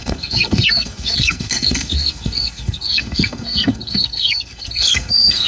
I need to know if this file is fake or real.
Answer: fake